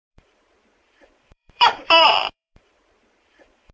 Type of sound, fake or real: fake